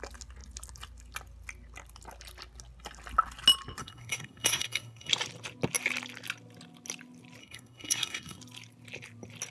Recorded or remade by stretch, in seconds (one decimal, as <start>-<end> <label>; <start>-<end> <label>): 0.0-3.8 recorded; 3.8-5.1 remade; 5.1-7.4 recorded; 7.4-8.4 remade; 8.4-9.5 recorded